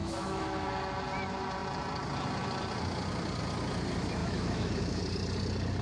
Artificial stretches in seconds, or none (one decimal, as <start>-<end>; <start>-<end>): 0.0-0.7; 4.2-5.0